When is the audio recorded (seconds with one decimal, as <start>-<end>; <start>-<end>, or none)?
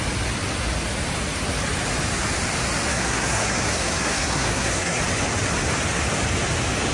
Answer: 0.0-2.9; 5.0-6.9